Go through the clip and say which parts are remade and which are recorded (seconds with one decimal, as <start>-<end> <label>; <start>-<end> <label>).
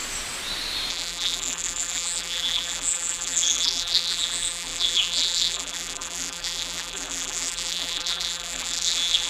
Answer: 0.0-0.9 recorded; 0.9-9.3 remade